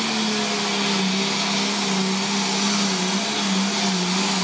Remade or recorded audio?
recorded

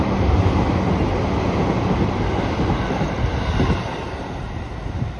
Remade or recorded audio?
recorded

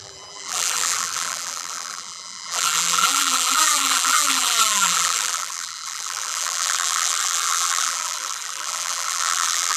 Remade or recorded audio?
remade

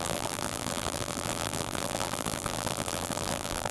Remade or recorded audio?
remade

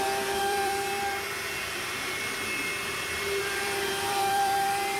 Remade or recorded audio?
remade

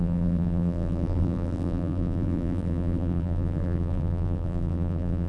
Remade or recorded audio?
remade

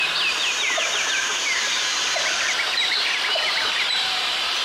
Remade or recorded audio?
remade